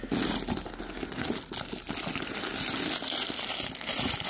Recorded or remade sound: recorded